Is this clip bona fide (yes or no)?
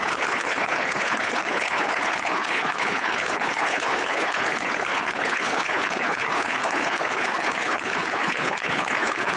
no